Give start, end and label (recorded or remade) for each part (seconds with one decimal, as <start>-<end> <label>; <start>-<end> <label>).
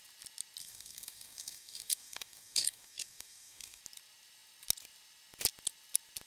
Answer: 0.0-0.6 recorded; 0.6-3.8 remade; 3.8-6.3 recorded